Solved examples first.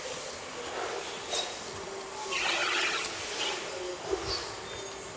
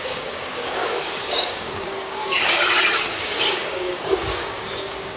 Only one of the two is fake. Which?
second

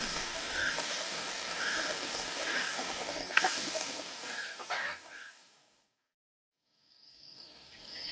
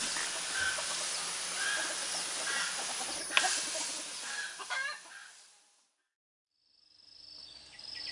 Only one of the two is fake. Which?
first